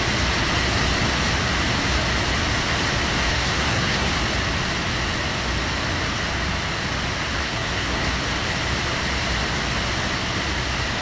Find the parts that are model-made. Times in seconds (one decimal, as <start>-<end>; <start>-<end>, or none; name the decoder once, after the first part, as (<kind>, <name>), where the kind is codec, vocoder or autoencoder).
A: 3.3-4.1 (codec, SNAC); 7.4-8.1